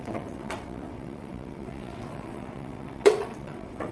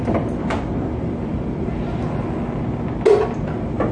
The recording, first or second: second